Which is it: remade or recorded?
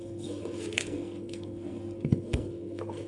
remade